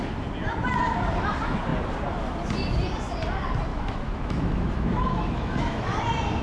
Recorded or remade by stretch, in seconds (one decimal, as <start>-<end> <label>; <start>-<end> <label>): 0.0-3.7 recorded; 3.7-6.0 remade; 6.0-6.4 recorded